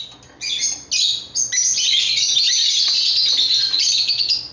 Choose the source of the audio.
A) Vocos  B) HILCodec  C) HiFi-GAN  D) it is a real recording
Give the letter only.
D